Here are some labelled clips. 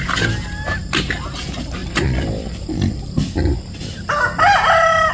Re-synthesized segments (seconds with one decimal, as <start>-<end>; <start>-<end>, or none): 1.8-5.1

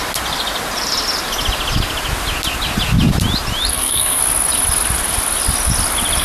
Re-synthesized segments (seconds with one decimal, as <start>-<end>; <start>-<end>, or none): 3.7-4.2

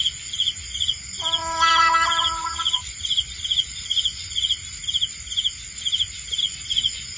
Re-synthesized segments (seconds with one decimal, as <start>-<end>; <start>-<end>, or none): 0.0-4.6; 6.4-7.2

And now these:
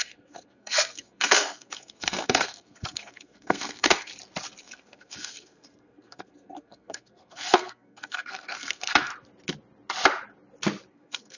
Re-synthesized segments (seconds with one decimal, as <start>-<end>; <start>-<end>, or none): 0.0-4.1; 4.6-9.1; 10.9-11.4

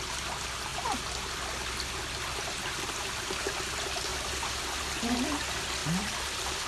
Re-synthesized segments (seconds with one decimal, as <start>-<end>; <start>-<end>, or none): none